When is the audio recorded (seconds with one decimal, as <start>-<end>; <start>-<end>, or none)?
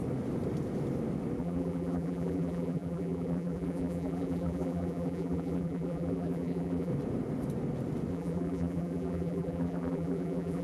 0.0-1.4; 6.9-8.1